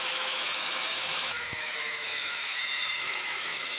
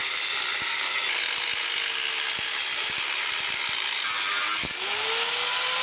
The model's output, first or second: first